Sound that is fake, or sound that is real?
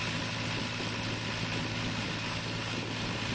real